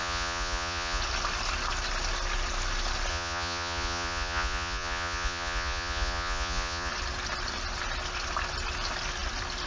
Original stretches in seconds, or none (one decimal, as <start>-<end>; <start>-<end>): 1.0-3.1; 6.9-9.7